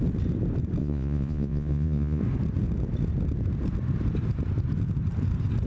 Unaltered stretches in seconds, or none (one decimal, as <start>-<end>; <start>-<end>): 0.0-0.8; 2.2-5.7